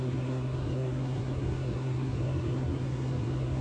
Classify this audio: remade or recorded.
remade